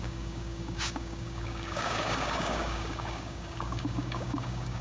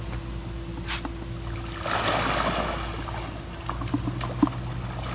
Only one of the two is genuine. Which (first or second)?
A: second